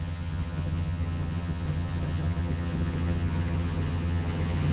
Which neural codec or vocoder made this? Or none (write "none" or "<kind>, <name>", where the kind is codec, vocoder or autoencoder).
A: vocoder, HiFi-GAN